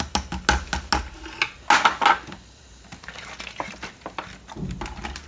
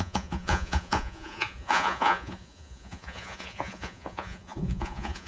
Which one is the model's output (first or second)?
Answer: second